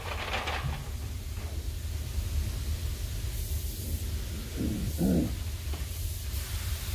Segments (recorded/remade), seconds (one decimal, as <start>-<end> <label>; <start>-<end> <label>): 0.0-6.9 recorded